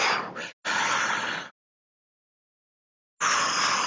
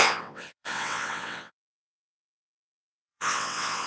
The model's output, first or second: second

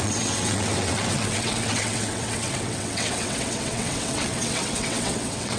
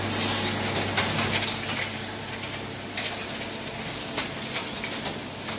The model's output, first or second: first